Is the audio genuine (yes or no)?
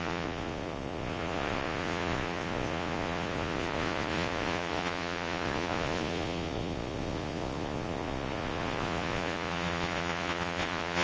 no